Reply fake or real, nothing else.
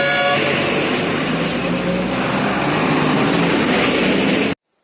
real